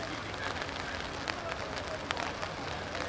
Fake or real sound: real